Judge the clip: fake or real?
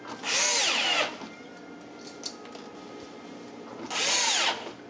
real